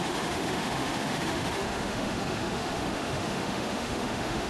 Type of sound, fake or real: fake